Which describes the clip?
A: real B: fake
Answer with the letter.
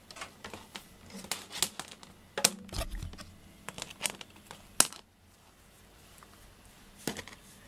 A